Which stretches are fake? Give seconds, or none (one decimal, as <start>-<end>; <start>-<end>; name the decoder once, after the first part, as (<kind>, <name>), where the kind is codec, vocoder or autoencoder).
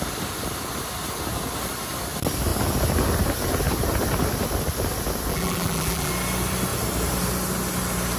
5.3-6.1 (vocoder, BigVGAN v2)